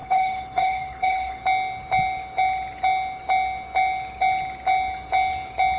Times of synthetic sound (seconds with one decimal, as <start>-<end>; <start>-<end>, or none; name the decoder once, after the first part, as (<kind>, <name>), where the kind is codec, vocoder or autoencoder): 0.0-1.4 (codec, HILCodec)